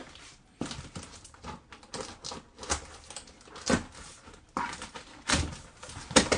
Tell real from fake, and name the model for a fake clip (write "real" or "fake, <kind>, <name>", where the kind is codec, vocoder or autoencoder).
real